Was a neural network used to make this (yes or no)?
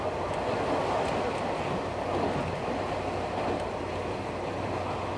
no